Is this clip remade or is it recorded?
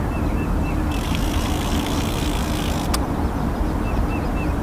recorded